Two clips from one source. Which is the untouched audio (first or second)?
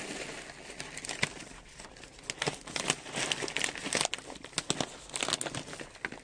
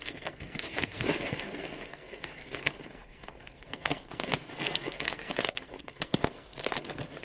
first